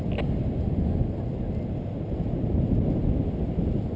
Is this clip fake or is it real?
real